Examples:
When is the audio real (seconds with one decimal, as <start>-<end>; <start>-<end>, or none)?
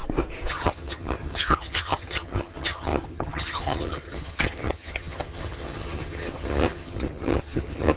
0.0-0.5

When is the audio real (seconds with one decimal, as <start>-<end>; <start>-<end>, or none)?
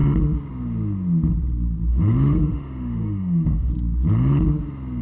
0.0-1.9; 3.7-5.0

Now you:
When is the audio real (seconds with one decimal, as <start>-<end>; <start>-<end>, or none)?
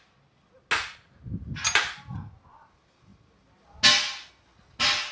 0.0-5.1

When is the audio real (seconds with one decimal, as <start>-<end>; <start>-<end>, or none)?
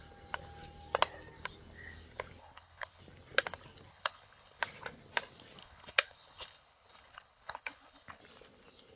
0.0-2.4; 3.0-3.9; 4.6-5.6; 8.2-9.0